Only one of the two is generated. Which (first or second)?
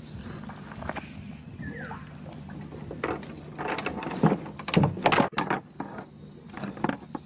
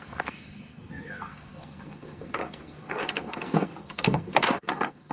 second